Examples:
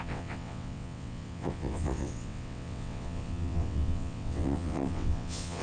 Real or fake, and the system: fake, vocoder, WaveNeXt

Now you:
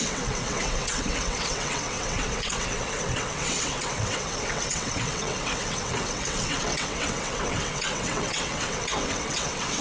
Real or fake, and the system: fake, vocoder, WaveNeXt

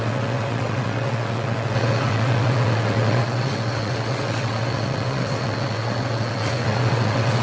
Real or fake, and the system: fake, vocoder, WaveNeXt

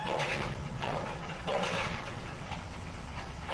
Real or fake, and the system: fake, vocoder, WaveNeXt